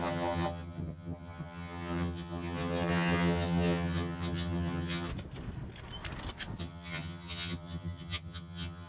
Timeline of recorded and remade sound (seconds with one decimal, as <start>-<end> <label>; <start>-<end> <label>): 0.0-5.1 remade; 5.1-6.6 recorded; 6.6-8.9 remade